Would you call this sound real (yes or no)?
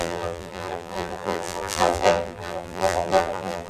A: no